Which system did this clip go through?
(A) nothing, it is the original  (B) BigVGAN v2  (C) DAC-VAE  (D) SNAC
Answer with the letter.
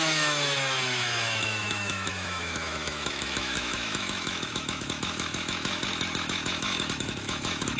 C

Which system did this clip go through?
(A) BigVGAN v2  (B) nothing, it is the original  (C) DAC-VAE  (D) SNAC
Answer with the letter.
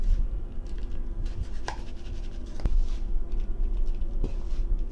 B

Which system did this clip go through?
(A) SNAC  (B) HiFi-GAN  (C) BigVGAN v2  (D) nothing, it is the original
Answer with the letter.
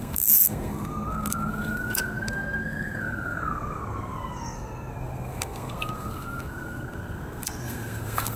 A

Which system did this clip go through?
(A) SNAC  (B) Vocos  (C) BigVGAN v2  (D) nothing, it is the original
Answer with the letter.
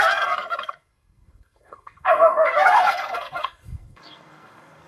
A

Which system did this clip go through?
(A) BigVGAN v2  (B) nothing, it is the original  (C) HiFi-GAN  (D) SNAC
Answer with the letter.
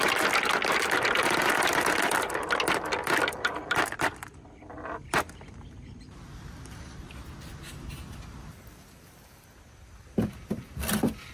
B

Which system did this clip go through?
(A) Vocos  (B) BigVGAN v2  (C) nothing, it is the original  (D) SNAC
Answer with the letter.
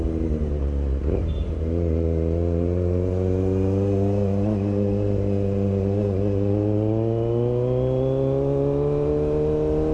C